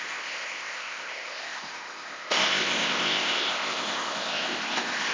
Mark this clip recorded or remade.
remade